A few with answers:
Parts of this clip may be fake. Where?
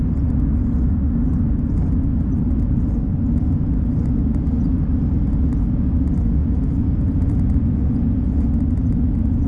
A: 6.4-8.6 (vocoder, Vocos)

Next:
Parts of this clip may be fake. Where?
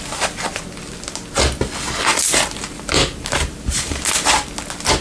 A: 2.1-4.0 (vocoder, BigVGAN v2)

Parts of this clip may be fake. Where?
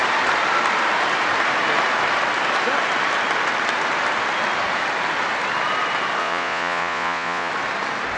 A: 6.2-7.5 (vocoder, Vocos)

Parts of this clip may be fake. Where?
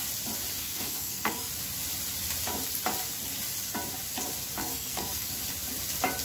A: 0.6-1.5 (codec, SNAC); 4.6-5.3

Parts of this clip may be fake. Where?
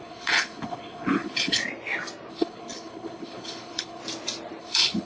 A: 0.0-1.6 (codec, HILCodec); 2.3-4.0; 4.6-5.0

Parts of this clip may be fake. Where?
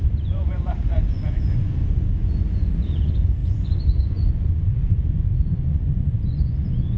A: 0.0-7.0 (vocoder, Vocos)